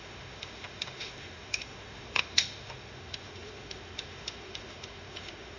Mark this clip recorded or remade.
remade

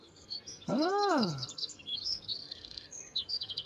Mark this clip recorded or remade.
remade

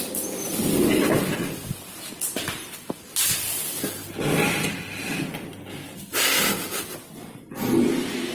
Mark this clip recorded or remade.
recorded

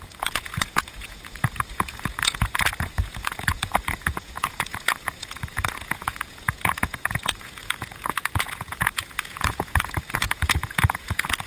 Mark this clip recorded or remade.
remade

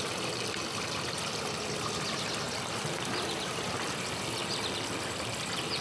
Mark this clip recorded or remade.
recorded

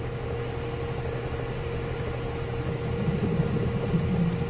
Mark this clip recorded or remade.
recorded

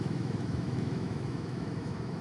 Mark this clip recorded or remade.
remade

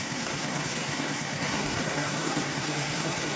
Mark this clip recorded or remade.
remade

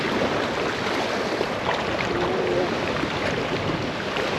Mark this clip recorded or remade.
recorded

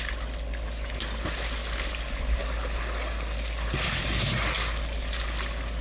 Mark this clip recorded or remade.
recorded